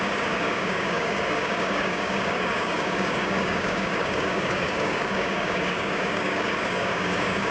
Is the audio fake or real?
fake